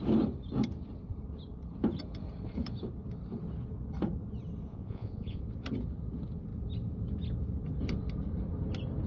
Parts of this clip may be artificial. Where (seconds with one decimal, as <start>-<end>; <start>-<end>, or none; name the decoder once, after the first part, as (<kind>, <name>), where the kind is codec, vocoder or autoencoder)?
4.7-5.4 (vocoder, Vocos)

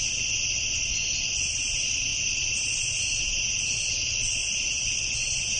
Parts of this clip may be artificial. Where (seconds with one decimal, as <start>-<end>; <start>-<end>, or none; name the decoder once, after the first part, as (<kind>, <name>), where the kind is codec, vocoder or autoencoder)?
2.1-3.2 (vocoder, BigVGAN v2)